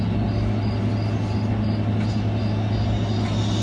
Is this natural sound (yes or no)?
yes